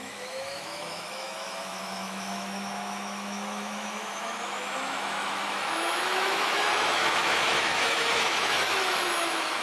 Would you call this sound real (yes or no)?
no